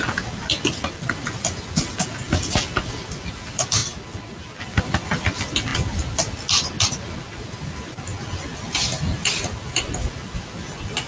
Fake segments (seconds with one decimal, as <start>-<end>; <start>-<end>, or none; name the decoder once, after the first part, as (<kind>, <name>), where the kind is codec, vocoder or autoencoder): none